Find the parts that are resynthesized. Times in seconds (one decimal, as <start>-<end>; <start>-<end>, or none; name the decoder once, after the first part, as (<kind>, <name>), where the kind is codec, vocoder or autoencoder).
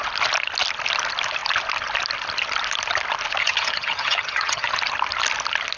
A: 3.4-4.7 (vocoder, HiFi-GAN)